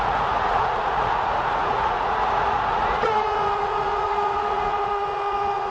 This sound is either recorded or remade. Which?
remade